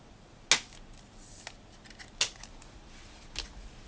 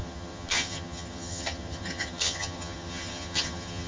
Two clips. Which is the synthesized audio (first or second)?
second